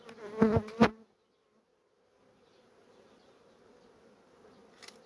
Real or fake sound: real